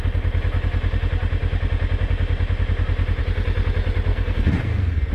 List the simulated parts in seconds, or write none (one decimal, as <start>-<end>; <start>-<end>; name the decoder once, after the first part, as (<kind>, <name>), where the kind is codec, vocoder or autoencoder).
4.1-5.1 (codec, SNAC)